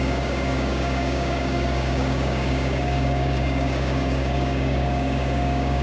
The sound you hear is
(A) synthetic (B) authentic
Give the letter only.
A